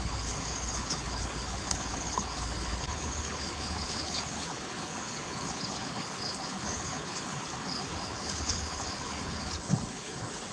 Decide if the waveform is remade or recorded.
remade